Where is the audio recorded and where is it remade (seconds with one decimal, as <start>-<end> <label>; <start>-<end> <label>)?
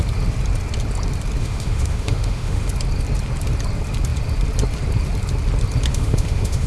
0.0-1.4 recorded; 1.4-2.7 remade; 2.7-5.9 recorded; 5.9-6.7 remade